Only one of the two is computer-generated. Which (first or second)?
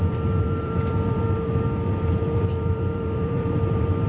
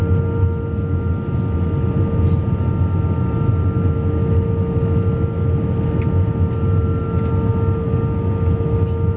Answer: first